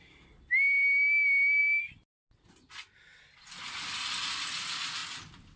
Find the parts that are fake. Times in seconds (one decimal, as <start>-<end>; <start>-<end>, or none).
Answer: none

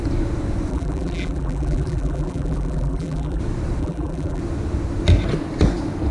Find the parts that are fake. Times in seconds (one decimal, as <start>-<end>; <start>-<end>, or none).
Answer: 0.7-3.4; 3.8-4.4

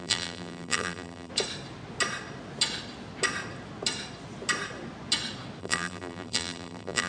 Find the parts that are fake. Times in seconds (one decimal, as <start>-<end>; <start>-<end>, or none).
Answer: 0.0-1.3; 5.6-7.1

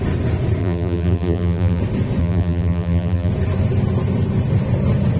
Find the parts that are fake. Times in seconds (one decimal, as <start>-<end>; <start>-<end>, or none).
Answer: 0.6-1.8; 2.2-3.3

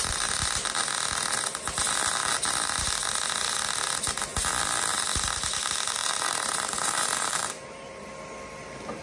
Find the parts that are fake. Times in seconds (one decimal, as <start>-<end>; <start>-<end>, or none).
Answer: 6.0-8.1